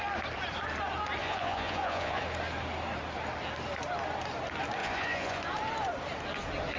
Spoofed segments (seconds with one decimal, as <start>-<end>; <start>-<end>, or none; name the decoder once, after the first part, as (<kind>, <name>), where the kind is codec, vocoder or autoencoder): 1.2-2.2 (vocoder, Vocos); 4.8-5.4